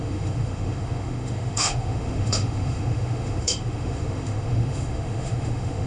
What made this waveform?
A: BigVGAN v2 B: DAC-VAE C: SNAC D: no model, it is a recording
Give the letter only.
B